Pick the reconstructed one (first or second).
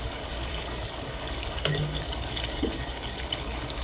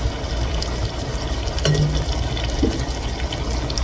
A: first